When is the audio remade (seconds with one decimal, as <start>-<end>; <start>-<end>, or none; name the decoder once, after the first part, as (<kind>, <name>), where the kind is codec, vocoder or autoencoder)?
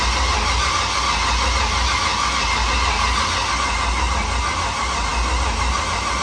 none